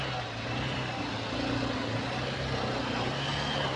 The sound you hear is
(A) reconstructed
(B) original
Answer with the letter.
B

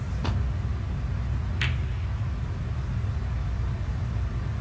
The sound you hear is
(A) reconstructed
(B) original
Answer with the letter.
B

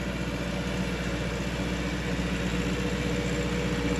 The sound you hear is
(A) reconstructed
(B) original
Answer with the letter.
B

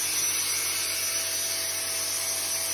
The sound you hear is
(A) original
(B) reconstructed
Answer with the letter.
A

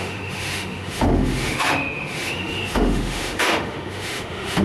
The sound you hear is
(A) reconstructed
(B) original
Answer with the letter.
A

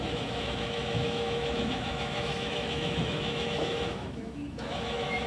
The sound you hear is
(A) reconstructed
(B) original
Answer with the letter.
A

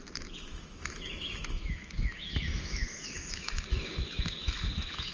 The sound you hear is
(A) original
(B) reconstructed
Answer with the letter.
B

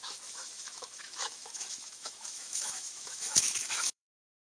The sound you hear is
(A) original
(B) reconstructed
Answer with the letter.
B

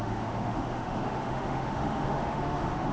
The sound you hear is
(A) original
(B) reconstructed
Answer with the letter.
B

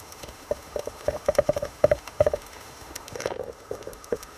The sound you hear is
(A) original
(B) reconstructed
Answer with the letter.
B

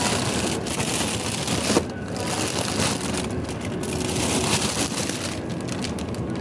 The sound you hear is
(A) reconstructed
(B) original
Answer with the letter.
B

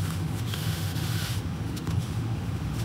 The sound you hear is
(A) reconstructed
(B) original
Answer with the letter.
A